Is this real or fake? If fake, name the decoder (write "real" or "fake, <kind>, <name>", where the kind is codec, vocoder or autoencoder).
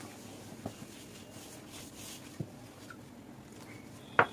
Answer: real